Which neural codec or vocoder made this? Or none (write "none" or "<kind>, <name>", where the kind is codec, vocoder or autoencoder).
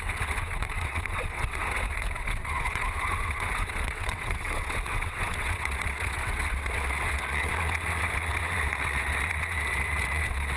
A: vocoder, WaveNeXt